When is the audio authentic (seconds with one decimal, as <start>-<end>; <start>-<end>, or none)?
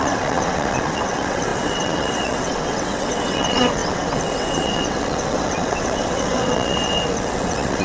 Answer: none